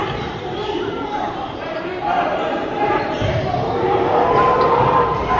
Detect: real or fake fake